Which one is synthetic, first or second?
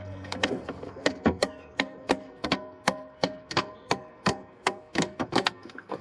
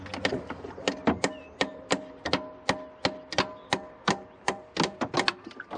first